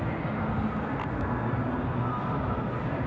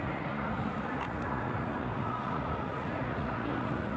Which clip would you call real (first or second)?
first